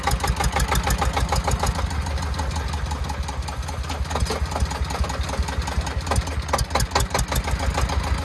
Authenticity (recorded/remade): recorded